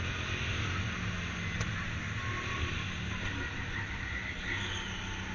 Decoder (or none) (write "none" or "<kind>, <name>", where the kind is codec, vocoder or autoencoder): none